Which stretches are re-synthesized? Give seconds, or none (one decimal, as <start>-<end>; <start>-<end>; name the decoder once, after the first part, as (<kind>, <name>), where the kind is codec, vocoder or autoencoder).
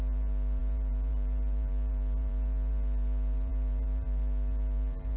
0.0-5.2 (vocoder, BigVGAN v2)